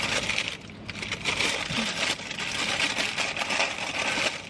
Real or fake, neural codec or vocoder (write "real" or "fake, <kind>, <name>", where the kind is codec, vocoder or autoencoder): real